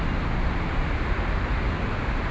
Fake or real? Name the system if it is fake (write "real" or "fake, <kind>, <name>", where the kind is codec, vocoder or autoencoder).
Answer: real